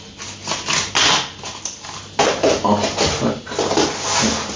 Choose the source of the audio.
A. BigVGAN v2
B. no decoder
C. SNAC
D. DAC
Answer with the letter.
B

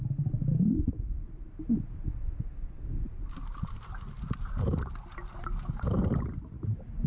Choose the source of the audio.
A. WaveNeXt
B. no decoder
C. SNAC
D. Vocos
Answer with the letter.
B